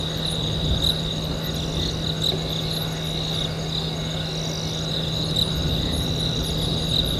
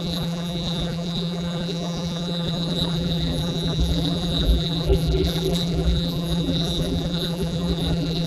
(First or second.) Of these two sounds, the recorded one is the first